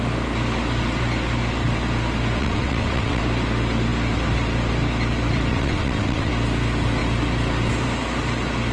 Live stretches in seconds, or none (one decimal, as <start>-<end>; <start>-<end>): 0.0-2.4; 3.2-5.5; 6.3-8.7